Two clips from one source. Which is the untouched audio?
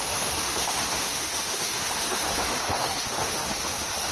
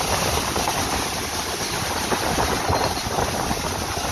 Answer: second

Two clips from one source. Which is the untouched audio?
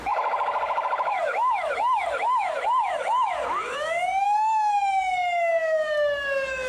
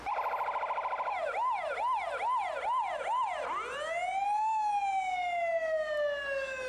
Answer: second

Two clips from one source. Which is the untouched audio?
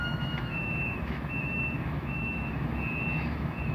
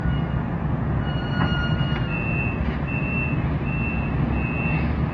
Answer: second